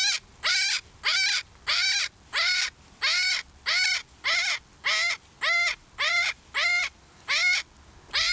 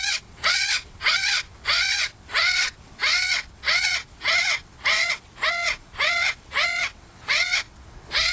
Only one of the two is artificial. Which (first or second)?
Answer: second